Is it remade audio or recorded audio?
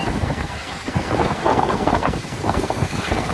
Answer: remade